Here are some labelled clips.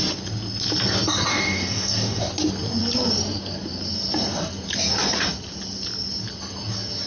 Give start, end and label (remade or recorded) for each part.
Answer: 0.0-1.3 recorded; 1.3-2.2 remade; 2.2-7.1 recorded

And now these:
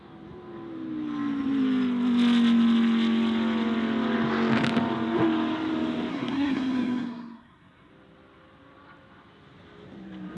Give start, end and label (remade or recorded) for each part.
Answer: 0.0-6.1 recorded; 6.1-7.9 remade; 7.9-10.4 recorded

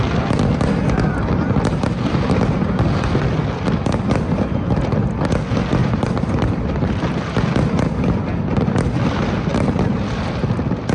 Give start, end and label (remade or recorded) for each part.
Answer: 0.0-5.8 recorded; 5.8-6.9 remade; 6.9-9.5 recorded; 9.5-10.0 remade; 10.0-10.9 recorded